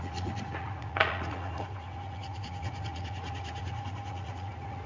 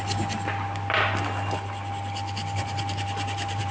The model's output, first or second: first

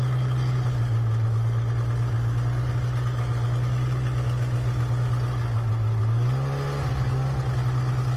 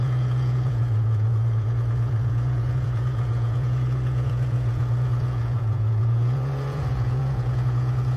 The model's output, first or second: second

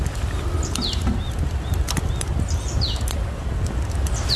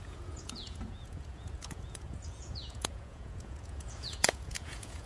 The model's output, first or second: second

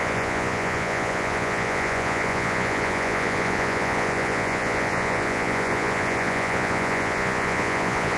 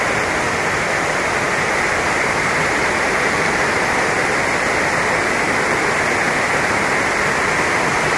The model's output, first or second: first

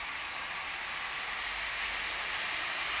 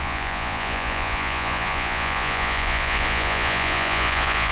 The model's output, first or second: second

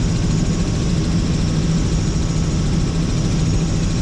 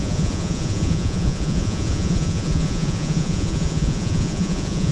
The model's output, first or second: second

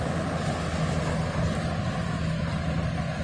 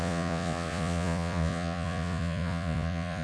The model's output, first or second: second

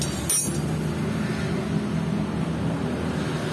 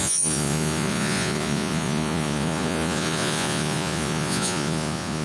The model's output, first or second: second